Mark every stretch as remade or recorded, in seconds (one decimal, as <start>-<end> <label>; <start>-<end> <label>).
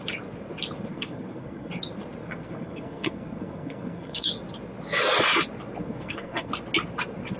0.0-0.9 recorded; 0.9-1.7 remade; 1.7-2.2 recorded; 2.2-4.3 remade; 4.3-5.8 recorded; 5.8-6.5 remade; 6.5-7.4 recorded